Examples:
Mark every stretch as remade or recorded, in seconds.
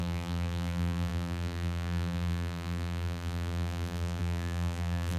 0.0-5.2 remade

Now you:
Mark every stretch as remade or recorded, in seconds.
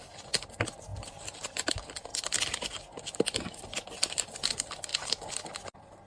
0.0-0.9 recorded; 0.9-1.7 remade; 1.7-6.1 recorded